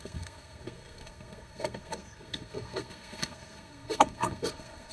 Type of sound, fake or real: fake